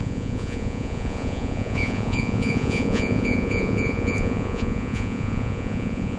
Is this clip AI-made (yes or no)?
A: yes